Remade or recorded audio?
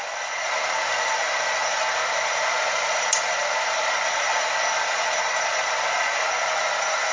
recorded